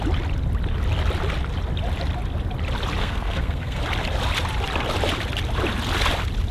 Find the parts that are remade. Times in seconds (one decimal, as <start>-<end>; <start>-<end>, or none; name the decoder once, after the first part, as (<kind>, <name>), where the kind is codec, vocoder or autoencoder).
3.0-3.8 (codec, SNAC)